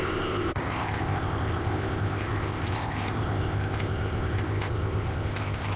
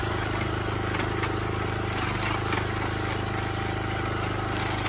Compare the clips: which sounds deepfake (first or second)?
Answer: first